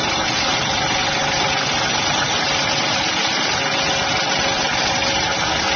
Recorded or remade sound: recorded